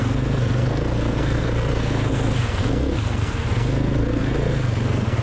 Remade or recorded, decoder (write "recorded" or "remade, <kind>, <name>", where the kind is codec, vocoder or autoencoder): remade, codec, SNAC